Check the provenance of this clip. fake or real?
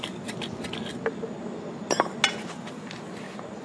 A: real